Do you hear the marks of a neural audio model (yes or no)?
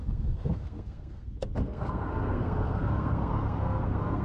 yes